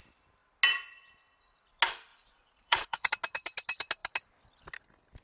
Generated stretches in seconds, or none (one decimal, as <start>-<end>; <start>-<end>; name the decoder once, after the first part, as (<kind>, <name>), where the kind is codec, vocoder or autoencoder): 2.1-3.1 (vocoder, Vocos)